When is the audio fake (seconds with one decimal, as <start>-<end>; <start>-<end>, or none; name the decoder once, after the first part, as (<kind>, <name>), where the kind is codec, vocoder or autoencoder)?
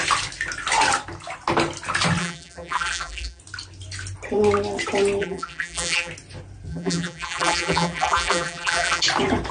2.2-3.4 (vocoder, BigVGAN v2); 5.2-6.1; 6.7-9.0